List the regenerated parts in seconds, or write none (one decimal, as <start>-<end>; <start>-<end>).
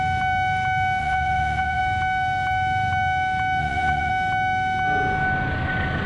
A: 1.0-1.8; 3.6-4.1